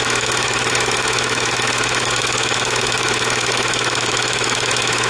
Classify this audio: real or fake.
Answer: fake